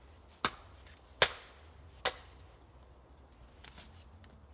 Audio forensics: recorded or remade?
recorded